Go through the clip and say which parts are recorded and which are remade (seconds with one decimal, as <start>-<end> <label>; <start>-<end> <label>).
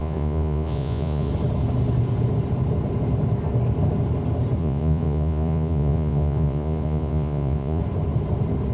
0.0-1.3 remade; 1.3-4.6 recorded; 4.6-7.8 remade; 7.8-8.7 recorded